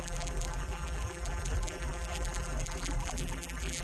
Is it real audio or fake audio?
fake